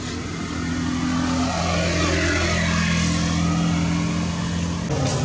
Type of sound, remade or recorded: recorded